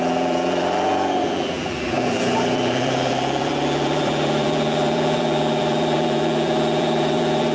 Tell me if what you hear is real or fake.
fake